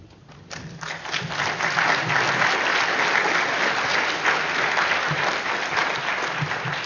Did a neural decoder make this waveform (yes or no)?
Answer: no